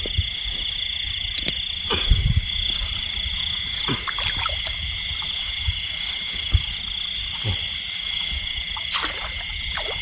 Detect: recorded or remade recorded